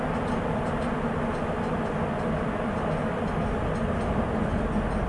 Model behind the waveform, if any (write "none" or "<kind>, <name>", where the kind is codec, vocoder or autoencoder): none